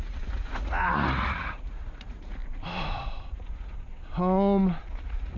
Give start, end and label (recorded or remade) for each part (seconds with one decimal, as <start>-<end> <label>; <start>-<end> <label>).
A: 0.0-2.4 remade; 2.4-3.3 recorded; 3.3-4.1 remade; 4.1-4.8 recorded; 4.8-5.4 remade